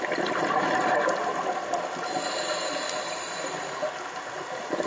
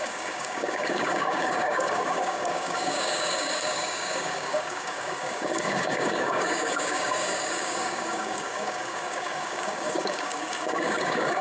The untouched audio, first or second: first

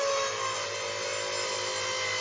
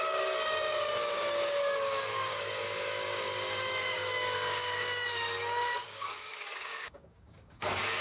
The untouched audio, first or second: first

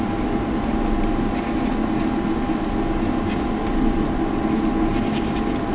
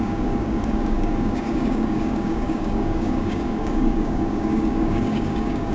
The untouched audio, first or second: first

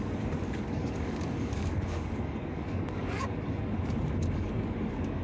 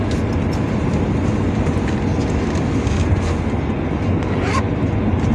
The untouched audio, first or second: second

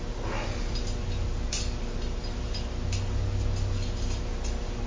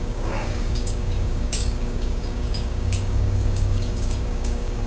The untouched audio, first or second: first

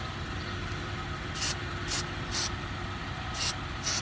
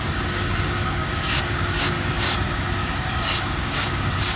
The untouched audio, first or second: first